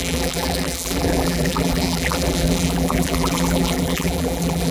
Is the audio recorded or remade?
remade